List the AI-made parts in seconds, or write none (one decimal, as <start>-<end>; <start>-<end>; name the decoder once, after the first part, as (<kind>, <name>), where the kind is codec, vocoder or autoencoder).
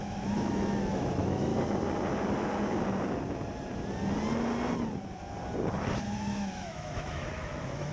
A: 0.0-1.5 (autoencoder, DAC-VAE); 6.0-7.9